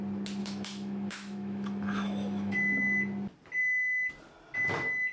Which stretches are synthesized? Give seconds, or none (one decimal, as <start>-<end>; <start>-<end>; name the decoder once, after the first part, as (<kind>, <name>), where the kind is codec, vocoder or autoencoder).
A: 0.4-2.8 (autoencoder, DAC-VAE)